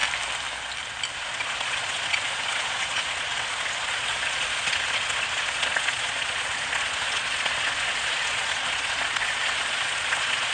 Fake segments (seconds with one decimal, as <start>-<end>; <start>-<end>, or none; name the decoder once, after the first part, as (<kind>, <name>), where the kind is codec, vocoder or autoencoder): 1.1-10.5 (vocoder, Vocos)